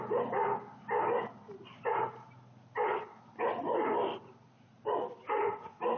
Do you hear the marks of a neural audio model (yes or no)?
no